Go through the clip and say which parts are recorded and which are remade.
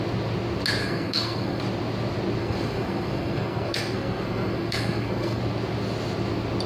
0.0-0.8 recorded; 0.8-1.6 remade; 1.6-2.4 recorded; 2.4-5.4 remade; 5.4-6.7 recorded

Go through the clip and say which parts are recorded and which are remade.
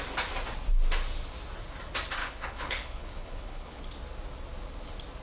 0.0-2.2 recorded; 2.2-3.8 remade; 3.8-5.2 recorded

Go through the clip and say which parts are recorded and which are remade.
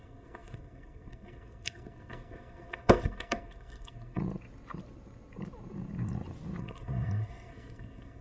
0.0-4.2 remade; 4.2-6.6 recorded; 6.6-8.2 remade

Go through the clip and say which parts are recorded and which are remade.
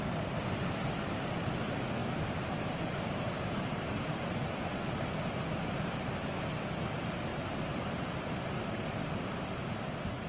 0.0-2.0 recorded; 2.0-4.9 remade; 4.9-7.3 recorded; 7.3-8.6 remade; 8.6-10.3 recorded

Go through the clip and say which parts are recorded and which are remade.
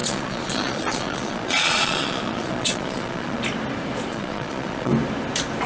0.0-3.4 remade; 3.4-4.1 recorded; 4.1-4.9 remade; 4.9-5.7 recorded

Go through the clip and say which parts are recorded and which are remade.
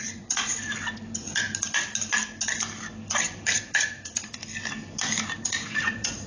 0.0-0.5 remade; 0.5-3.6 recorded; 3.6-4.4 remade; 4.4-5.4 recorded; 5.4-6.3 remade